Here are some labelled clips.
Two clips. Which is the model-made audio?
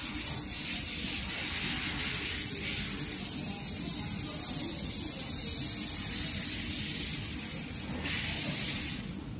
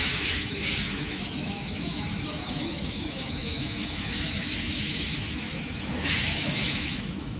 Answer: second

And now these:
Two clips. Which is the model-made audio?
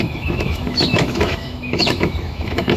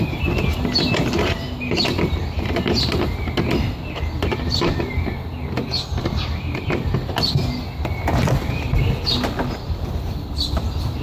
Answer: first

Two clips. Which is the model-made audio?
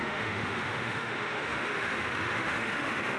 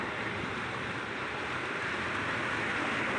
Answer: first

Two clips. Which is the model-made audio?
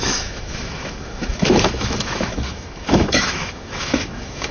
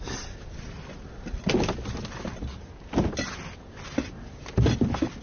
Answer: first